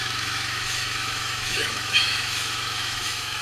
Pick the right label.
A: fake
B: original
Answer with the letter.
A